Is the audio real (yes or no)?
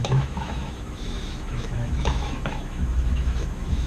no